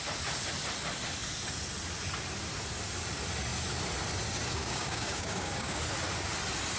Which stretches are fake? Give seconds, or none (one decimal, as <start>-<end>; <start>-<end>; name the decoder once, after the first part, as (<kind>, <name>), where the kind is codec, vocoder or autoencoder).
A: 4.6-5.8 (codec, DAC)